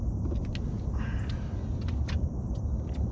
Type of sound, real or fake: real